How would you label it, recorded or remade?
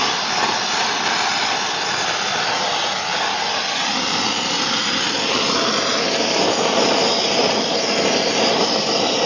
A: recorded